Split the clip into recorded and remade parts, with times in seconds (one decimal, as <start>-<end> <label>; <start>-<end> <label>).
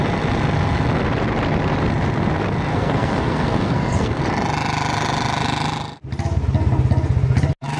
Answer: 0.0-2.7 recorded; 2.7-4.2 remade; 4.2-7.8 recorded